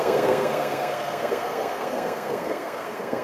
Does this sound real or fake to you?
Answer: fake